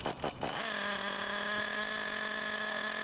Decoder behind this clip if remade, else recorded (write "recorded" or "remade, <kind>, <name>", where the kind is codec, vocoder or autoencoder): recorded